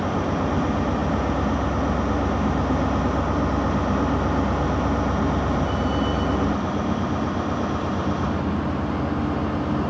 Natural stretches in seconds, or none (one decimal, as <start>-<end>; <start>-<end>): 0.0-9.9